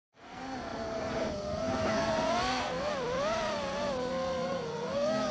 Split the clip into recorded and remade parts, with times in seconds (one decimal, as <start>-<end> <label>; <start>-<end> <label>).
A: 0.0-2.9 remade; 2.9-4.1 recorded; 4.1-5.3 remade

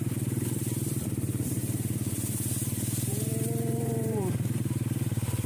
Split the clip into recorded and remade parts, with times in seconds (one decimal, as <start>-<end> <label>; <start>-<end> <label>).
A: 0.0-5.5 remade